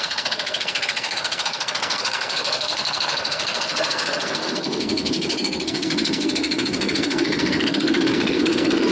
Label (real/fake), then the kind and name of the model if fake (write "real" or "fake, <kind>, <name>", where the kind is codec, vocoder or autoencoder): fake, codec, SNAC